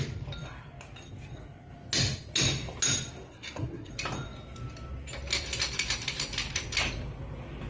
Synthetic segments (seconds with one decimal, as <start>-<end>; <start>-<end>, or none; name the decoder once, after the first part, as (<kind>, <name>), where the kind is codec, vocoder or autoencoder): 3.3-3.9 (codec, SNAC)